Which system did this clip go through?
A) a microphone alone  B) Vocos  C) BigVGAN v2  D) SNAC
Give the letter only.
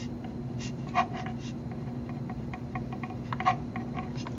A